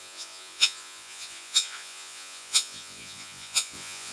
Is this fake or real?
fake